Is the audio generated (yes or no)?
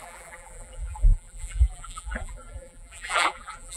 yes